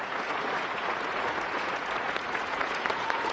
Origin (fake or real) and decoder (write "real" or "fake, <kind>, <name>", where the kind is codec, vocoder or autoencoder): fake, vocoder, Vocos